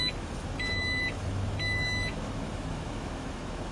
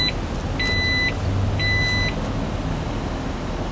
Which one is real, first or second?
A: second